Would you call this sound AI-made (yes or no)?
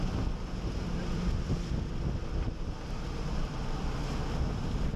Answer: no